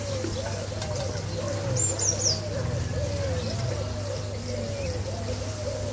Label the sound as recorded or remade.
recorded